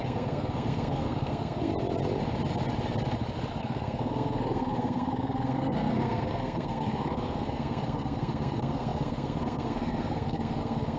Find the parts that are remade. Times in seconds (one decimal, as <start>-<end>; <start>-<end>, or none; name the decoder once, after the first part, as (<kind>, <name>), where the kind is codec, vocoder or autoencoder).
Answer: 0.0-1.7 (codec, SNAC); 3.6-11.0